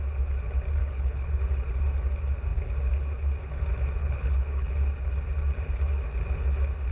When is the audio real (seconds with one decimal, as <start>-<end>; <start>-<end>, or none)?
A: 0.0-0.8; 1.4-4.0; 4.7-6.9